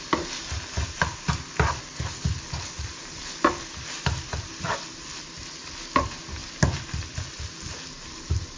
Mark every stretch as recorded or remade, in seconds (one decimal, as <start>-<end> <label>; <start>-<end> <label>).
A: 0.0-8.6 recorded